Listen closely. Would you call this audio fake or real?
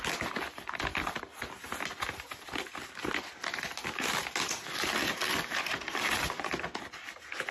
real